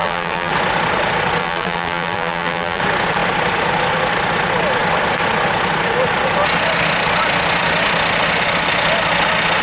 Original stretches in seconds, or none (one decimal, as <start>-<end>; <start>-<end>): 0.5-1.4; 2.8-9.6